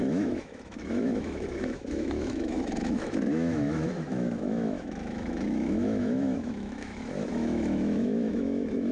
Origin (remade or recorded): remade